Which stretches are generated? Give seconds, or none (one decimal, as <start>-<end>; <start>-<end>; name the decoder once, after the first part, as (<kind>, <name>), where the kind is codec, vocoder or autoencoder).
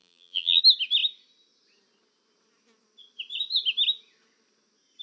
0.0-0.6 (vocoder, BigVGAN v2)